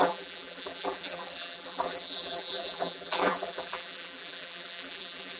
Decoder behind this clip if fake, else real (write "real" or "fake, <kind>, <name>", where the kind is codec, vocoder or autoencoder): fake, vocoder, BigVGAN v2